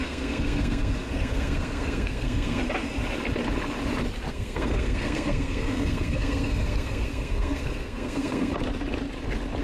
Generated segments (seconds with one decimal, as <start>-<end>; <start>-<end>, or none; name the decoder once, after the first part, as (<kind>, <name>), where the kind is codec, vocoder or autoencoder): 0.0-2.6 (codec, SNAC); 4.3-8.5